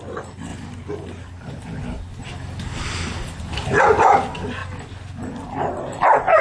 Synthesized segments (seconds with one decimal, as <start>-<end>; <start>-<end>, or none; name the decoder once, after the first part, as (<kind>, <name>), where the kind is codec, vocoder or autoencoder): none